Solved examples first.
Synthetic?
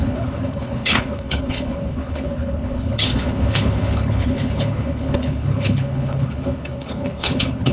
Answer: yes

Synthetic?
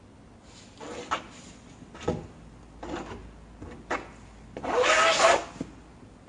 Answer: no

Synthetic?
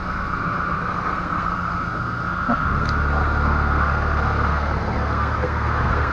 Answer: yes